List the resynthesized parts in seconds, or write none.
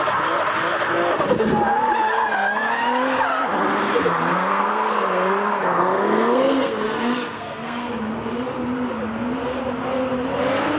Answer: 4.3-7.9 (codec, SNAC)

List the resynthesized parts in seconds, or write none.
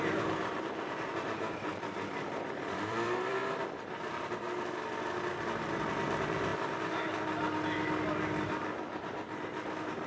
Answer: 0.0-3.4 (vocoder, BigVGAN v2); 5.4-6.5; 9.0-10.1